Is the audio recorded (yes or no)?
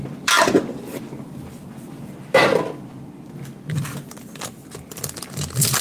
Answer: no